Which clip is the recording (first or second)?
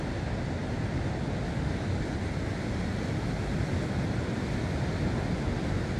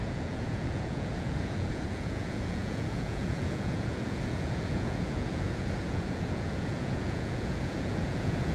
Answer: first